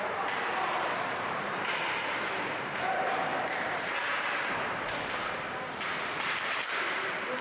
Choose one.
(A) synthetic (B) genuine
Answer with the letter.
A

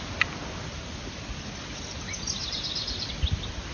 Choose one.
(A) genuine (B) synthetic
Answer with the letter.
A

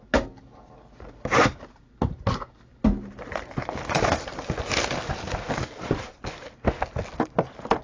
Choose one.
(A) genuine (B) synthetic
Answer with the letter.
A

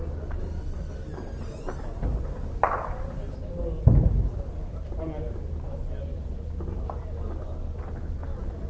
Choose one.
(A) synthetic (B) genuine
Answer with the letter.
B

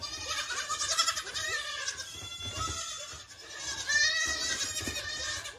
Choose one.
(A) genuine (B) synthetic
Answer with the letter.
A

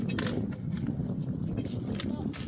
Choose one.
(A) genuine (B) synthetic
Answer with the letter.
A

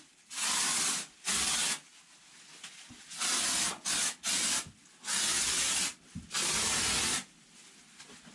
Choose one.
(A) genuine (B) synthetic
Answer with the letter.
A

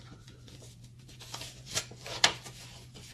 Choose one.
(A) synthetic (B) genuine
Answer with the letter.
A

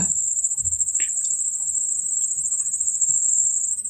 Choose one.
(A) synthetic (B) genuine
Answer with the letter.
B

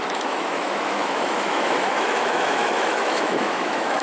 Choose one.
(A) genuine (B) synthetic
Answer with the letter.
B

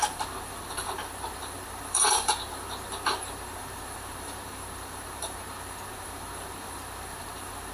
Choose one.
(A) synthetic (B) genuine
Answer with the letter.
A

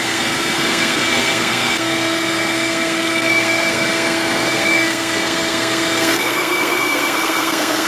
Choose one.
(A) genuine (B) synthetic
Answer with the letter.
B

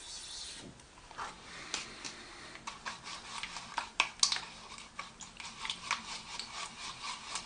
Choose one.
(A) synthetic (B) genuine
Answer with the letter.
B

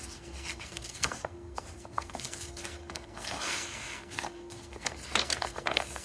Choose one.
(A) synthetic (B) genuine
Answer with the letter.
A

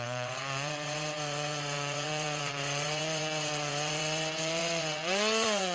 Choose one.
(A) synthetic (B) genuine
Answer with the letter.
A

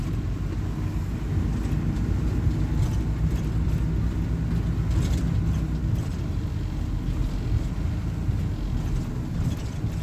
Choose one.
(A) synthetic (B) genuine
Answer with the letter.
B